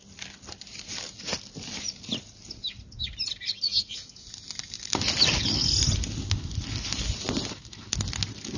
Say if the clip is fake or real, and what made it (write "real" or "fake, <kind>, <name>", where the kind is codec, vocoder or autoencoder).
real